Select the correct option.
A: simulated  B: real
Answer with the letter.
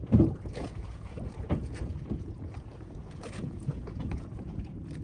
A